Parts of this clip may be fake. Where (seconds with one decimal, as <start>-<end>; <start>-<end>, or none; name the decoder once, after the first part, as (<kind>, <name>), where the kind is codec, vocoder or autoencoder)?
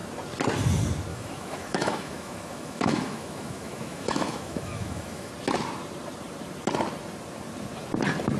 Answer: 1.1-5.3 (autoencoder, DAC-VAE)